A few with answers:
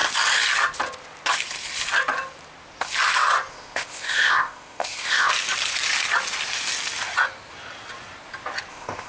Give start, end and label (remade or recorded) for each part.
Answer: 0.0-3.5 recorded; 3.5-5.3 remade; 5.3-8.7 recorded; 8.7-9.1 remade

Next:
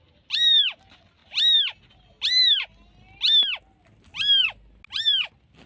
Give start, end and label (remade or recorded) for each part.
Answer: 0.0-5.7 recorded

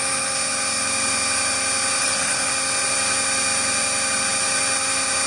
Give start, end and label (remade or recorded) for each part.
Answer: 0.0-2.0 recorded; 2.0-2.5 remade; 2.5-5.3 recorded

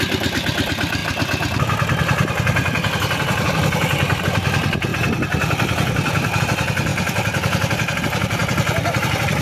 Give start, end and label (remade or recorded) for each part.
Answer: 0.0-4.9 remade; 4.9-6.4 recorded; 6.4-9.4 remade